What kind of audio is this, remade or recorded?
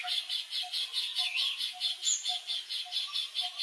recorded